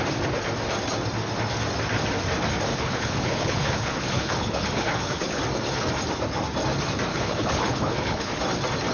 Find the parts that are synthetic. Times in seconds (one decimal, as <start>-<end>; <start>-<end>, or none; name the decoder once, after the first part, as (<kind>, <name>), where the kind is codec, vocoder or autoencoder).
2.7-5.4 (codec, HILCodec); 7.1-8.4

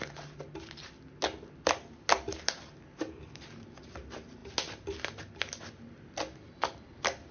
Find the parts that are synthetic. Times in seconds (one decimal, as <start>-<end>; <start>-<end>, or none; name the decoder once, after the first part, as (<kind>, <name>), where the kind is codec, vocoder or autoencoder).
none

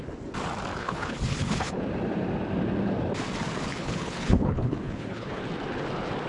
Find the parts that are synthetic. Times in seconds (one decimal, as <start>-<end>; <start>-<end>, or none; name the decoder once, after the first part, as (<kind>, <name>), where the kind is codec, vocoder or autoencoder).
0.7-1.8 (codec, HILCodec); 3.7-5.4